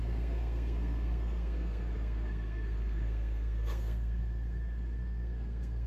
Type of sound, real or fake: fake